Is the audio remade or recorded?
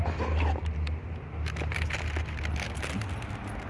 recorded